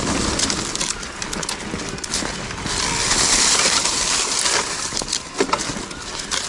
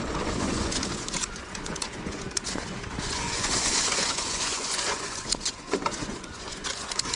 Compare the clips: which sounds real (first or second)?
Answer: first